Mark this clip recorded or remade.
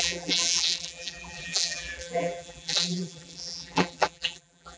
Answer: remade